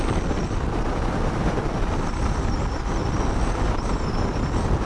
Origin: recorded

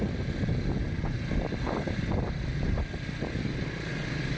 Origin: recorded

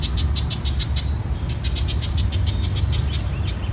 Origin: recorded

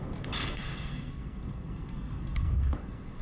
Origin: remade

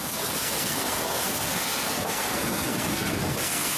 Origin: remade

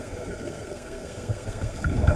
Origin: remade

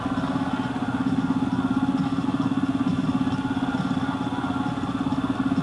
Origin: recorded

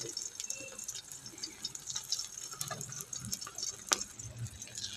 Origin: recorded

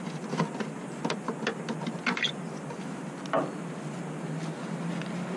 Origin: recorded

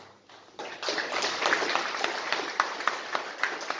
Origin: recorded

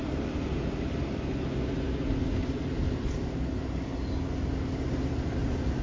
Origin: recorded